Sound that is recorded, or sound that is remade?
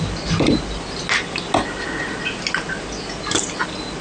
recorded